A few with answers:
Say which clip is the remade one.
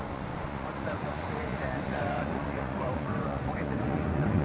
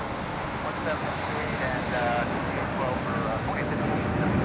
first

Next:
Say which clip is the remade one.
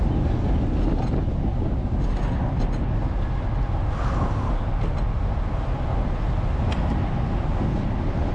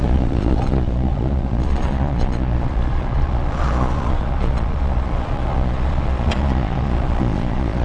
second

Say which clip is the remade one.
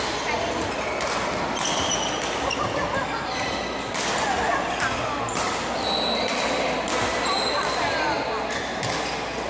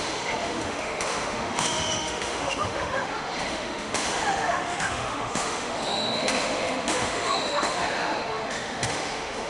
second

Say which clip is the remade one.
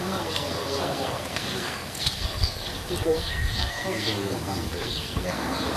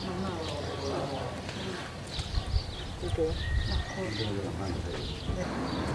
first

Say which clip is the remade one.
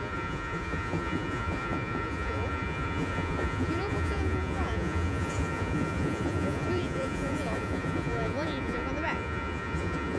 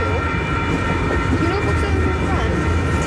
first